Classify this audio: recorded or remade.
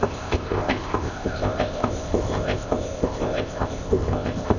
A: remade